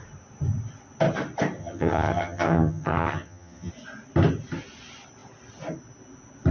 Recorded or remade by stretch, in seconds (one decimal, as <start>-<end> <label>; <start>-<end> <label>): 0.0-1.6 recorded; 1.6-3.7 remade; 3.7-6.5 recorded